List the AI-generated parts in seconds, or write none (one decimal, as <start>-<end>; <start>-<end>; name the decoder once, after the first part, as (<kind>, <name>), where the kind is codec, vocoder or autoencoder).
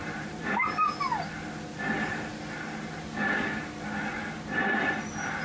0.0-0.9 (vocoder, BigVGAN v2)